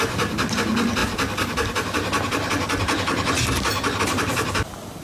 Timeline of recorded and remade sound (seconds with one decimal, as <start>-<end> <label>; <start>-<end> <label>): 0.0-5.0 recorded